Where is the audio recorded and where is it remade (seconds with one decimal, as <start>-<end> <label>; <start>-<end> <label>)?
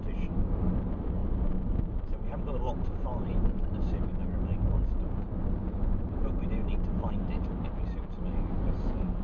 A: 0.0-1.2 recorded; 1.2-4.2 remade; 4.2-5.4 recorded; 5.4-6.7 remade; 6.7-9.2 recorded